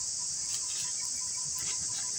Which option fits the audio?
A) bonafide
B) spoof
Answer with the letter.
A